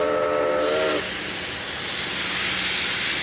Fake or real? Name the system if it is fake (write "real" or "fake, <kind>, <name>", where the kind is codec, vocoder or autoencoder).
real